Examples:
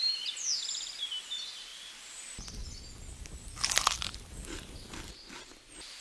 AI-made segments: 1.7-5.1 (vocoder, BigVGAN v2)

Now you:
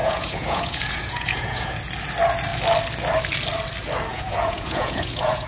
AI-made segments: 0.0-1.8 (vocoder, Vocos); 4.1-5.5

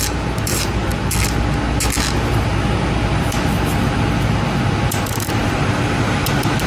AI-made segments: 0.0-0.9 (vocoder, BigVGAN v2); 4.9-6.7